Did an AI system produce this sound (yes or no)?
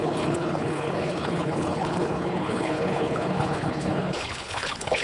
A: yes